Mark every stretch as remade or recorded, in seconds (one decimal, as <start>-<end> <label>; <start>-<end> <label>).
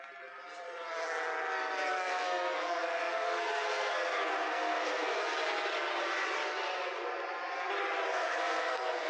0.0-1.9 recorded; 1.9-5.2 remade; 5.2-8.1 recorded; 8.1-9.1 remade